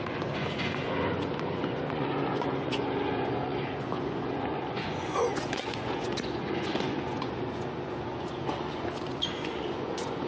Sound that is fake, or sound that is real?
fake